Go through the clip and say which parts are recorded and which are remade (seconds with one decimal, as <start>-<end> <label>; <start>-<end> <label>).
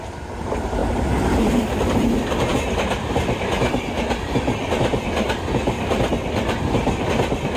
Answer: 0.0-7.6 recorded